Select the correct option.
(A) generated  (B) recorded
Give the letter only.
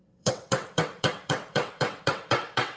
A